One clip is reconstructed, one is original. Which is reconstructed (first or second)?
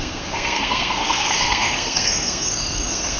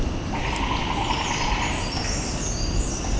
first